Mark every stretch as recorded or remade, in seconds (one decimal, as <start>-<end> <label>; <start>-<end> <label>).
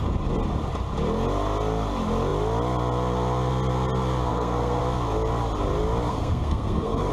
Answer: 0.0-4.3 recorded; 4.3-4.8 remade; 4.8-6.1 recorded; 6.1-7.1 remade